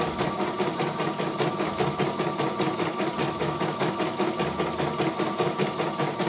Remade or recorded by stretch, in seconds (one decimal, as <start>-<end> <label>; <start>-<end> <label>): 0.0-3.2 recorded; 3.2-3.9 remade; 3.9-6.3 recorded